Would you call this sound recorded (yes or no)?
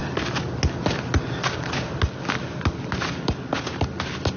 yes